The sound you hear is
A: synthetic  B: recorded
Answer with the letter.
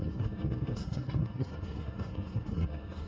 A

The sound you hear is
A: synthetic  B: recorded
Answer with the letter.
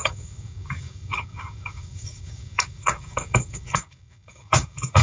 A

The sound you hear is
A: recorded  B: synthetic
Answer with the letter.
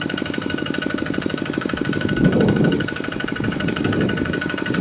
B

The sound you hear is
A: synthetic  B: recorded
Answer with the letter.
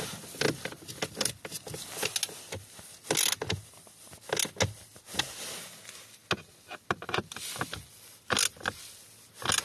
B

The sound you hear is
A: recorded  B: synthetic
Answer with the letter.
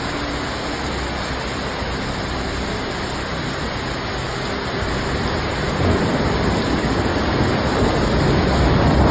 A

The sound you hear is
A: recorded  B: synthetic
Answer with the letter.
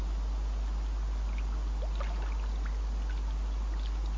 A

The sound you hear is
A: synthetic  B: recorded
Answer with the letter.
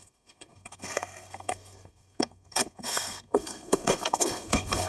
A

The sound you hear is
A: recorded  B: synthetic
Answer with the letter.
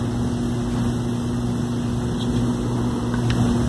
A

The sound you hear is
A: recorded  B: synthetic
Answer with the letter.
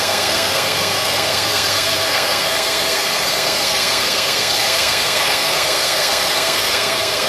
B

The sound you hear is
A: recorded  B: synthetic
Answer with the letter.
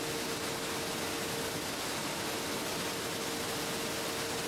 A